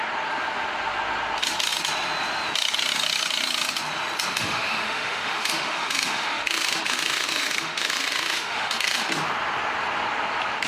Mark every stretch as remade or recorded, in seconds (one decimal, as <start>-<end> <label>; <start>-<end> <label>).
0.0-4.3 recorded; 4.3-9.1 remade; 9.1-10.7 recorded